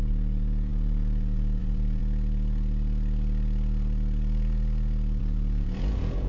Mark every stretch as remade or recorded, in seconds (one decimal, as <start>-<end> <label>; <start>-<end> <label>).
0.0-2.0 remade; 2.0-5.2 recorded; 5.2-6.3 remade